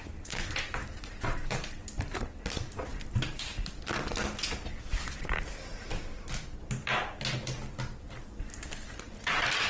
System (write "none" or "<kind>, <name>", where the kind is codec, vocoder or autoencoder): none